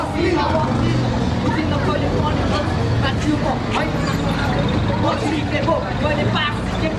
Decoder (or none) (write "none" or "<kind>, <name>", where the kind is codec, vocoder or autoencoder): none